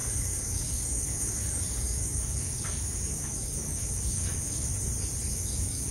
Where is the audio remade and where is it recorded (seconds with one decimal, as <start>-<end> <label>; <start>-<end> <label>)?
0.0-4.7 remade; 4.7-5.3 recorded; 5.3-5.9 remade